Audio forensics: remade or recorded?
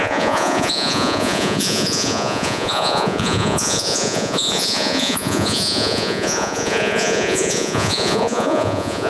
remade